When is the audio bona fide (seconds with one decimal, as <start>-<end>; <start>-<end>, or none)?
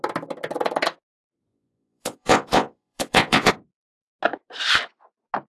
0.0-1.5; 3.5-5.5